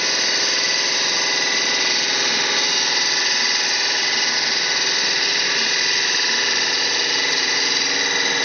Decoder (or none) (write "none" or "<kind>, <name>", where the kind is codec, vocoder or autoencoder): none